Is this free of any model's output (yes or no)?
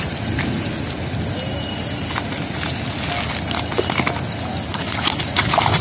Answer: yes